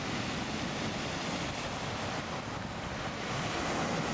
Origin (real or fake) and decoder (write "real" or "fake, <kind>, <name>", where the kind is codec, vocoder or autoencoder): real